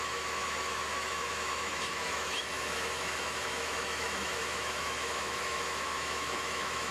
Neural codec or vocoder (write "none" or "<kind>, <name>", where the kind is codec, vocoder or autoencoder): autoencoder, DAC-VAE